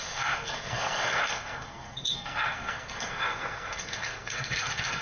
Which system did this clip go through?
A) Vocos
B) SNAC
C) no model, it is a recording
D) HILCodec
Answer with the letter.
B